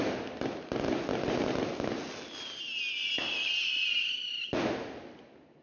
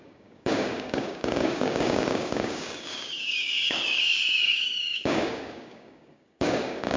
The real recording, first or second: first